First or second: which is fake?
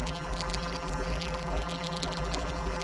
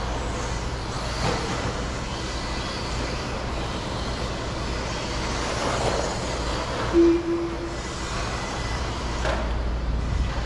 first